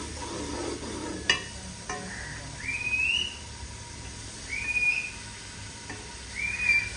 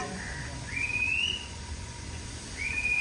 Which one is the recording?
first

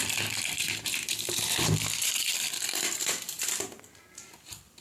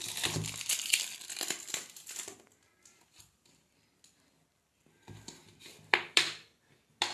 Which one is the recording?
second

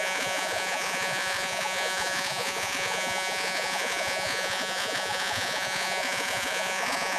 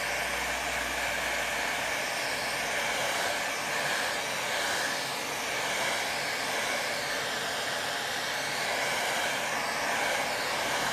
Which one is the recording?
second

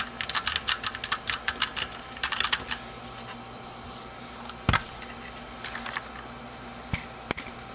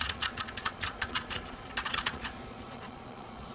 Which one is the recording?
first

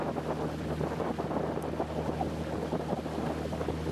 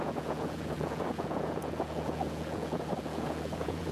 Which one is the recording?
first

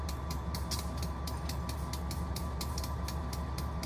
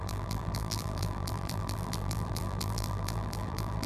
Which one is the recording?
first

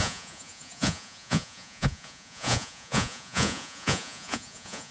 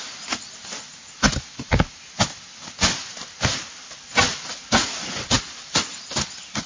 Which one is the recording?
second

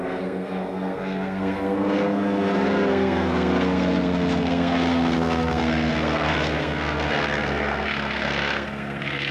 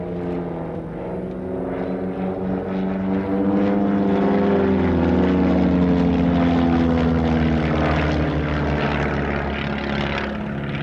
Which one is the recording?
second